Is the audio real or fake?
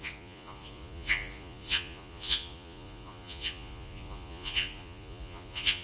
fake